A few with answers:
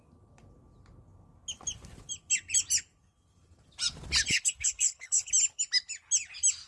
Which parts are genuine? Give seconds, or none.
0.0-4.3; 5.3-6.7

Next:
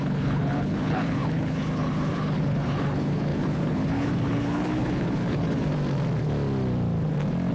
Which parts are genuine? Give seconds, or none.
5.7-7.5